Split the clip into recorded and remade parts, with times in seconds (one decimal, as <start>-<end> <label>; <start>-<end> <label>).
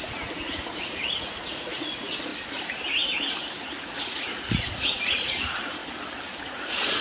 0.0-2.3 remade; 2.3-3.8 recorded; 3.8-5.8 remade; 5.8-6.4 recorded; 6.4-7.0 remade